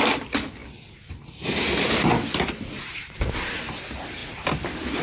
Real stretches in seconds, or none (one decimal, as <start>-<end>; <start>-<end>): 0.0-5.0